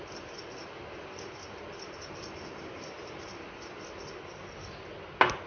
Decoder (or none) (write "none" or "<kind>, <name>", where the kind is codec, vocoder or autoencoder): none